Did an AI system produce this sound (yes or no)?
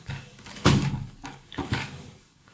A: yes